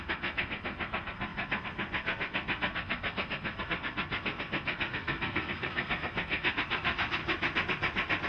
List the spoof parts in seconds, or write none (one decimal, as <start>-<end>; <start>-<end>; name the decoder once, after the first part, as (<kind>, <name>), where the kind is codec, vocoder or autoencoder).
0.0-7.2 (codec, SNAC)